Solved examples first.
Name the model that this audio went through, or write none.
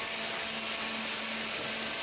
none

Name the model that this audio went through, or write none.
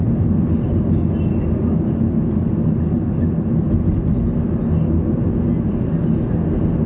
none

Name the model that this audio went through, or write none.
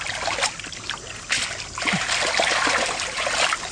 none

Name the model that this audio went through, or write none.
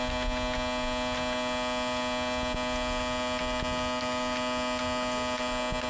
none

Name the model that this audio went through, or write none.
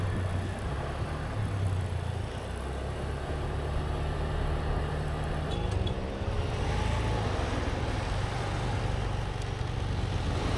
none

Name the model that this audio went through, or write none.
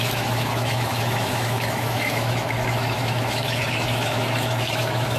autoencoder, DAC-VAE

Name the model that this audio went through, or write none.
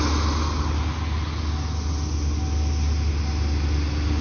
none